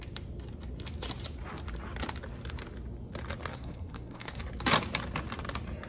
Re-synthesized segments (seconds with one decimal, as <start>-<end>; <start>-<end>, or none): 3.5-4.4